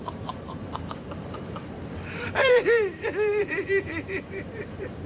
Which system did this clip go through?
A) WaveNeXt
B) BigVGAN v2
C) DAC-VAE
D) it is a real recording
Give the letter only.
B